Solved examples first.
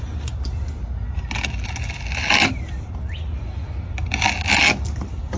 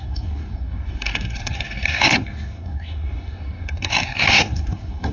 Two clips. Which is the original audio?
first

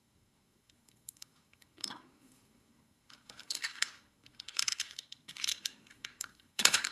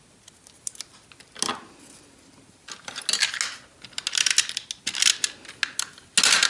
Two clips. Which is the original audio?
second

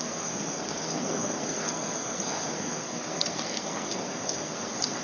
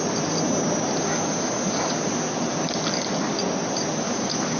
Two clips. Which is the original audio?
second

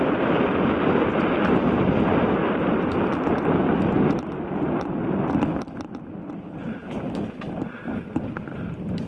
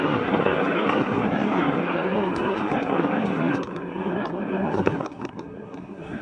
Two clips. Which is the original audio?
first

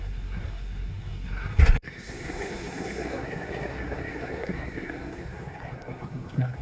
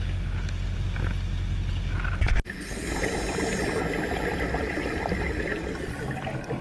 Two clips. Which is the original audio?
second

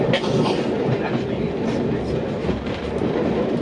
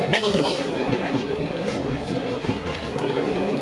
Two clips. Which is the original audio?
first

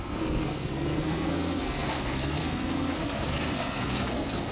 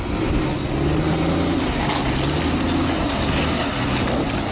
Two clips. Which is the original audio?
second